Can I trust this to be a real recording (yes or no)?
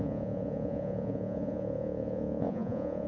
no